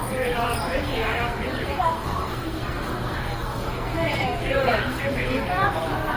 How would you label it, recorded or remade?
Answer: remade